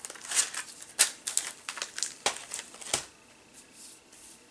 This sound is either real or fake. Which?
real